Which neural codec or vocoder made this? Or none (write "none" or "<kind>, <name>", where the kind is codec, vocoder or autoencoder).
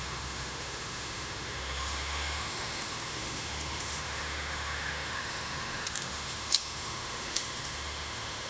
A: autoencoder, DAC-VAE